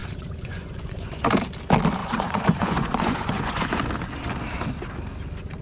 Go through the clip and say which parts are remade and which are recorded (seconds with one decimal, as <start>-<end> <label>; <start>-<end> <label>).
0.0-1.2 remade; 1.2-2.0 recorded; 2.0-3.8 remade; 3.8-5.6 recorded